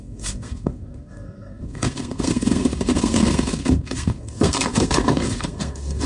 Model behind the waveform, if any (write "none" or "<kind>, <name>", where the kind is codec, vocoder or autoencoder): codec, SNAC